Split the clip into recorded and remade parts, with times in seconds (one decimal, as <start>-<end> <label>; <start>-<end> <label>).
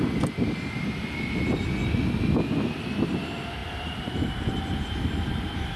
0.0-3.6 recorded; 3.6-4.6 remade; 4.6-5.8 recorded